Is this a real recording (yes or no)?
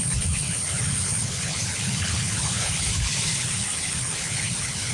no